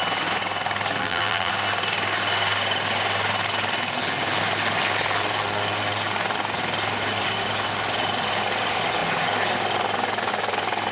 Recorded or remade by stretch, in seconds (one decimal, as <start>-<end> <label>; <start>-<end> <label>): 0.0-1.0 recorded; 1.0-1.5 remade; 1.5-10.9 recorded